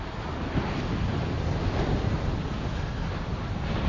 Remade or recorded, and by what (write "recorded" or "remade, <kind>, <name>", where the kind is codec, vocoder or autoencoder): recorded